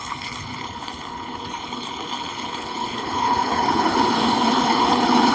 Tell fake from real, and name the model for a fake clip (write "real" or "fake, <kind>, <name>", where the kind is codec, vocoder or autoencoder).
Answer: fake, codec, HILCodec